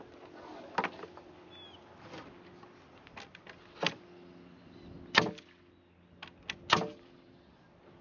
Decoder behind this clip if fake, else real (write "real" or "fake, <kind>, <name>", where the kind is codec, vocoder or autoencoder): real